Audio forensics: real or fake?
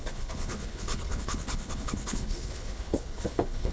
fake